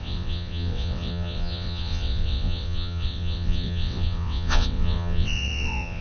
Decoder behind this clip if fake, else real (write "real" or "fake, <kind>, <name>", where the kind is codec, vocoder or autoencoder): fake, vocoder, WaveNeXt